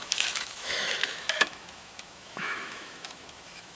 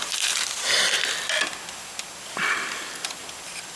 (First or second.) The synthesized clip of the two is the first